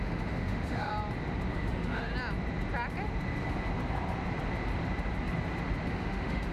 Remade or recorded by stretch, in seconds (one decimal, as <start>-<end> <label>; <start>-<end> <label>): 0.0-0.9 remade; 0.9-1.5 recorded; 1.5-2.1 remade; 2.1-5.9 recorded; 5.9-6.5 remade

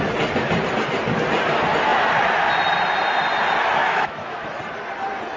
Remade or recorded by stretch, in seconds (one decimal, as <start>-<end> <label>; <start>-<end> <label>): 0.0-3.8 recorded; 3.8-4.6 remade; 4.6-5.4 recorded

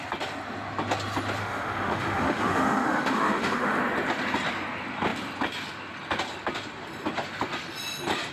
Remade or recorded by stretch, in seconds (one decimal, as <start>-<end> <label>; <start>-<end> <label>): 0.0-1.4 recorded; 1.4-3.8 remade; 3.8-8.3 recorded

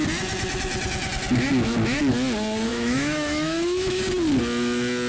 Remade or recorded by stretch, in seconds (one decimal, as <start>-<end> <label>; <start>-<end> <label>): 0.0-2.7 recorded; 2.7-4.0 remade; 4.0-5.1 recorded